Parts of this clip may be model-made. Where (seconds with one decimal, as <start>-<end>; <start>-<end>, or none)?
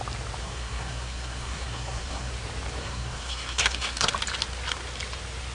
0.4-2.3; 2.8-4.1